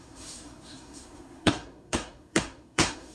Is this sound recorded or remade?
remade